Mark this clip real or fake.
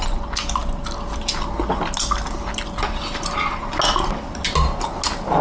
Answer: real